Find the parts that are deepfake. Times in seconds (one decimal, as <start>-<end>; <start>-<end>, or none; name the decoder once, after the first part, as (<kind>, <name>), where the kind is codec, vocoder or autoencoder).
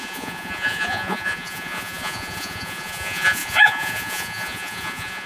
0.0-5.3 (vocoder, Vocos)